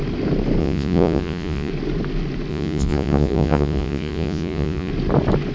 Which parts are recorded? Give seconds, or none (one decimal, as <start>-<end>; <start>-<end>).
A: 0.0-0.6; 1.7-2.5; 4.9-5.5